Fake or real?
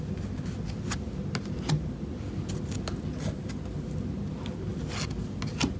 real